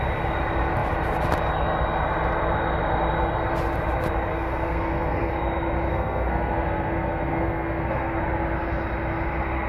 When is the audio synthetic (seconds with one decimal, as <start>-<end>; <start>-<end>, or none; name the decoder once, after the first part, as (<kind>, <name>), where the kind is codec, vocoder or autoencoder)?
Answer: 4.3-5.3 (codec, SNAC); 5.9-8.2